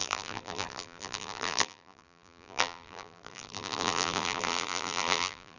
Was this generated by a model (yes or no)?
yes